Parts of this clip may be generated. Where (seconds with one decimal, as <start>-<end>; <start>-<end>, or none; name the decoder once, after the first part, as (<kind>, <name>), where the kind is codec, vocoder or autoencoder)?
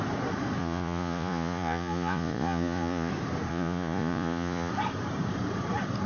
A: 0.6-3.1 (vocoder, Vocos); 3.5-4.7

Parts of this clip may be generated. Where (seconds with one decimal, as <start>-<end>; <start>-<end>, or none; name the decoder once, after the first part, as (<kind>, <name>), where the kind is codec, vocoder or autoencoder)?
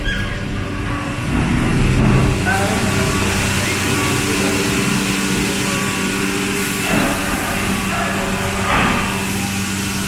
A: none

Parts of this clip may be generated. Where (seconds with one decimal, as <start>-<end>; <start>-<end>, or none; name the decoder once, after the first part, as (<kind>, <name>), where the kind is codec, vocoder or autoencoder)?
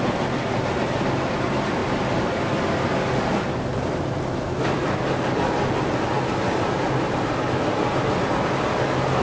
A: none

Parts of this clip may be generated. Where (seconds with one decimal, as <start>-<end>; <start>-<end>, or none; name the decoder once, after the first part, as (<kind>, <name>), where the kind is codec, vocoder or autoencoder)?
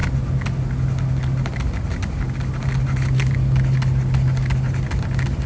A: none